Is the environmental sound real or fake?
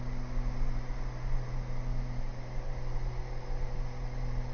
real